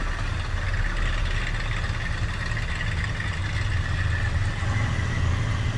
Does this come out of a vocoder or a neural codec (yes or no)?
no